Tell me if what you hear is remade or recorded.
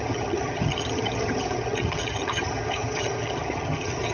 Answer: remade